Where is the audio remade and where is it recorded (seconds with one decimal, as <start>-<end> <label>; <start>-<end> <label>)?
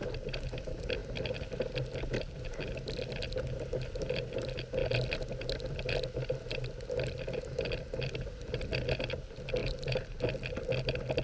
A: 0.0-9.6 recorded; 9.6-10.2 remade; 10.2-11.2 recorded